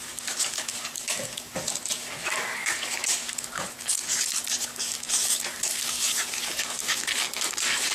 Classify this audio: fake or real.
fake